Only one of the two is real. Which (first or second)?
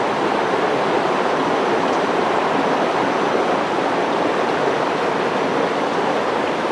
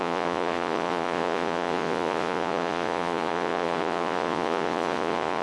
first